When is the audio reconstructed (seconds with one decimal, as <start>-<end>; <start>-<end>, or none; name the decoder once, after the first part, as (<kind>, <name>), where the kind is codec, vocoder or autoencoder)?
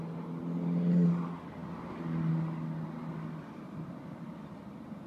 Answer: none